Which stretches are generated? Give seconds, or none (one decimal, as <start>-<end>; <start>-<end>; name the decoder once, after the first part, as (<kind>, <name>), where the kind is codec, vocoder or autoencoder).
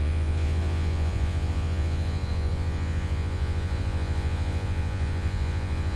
0.0-6.0 (vocoder, Vocos)